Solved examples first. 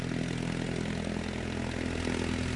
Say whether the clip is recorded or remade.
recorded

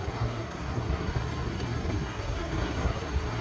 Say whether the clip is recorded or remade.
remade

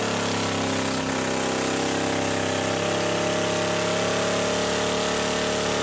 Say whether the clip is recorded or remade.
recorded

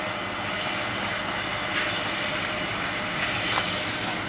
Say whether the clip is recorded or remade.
recorded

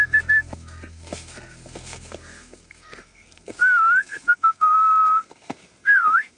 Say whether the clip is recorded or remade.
remade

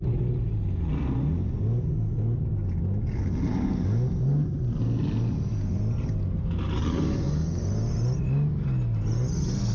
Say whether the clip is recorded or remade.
recorded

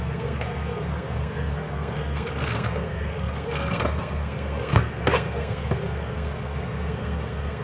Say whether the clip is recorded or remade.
remade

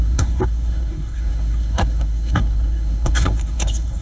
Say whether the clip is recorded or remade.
remade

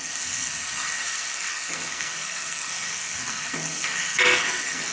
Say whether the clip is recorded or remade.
remade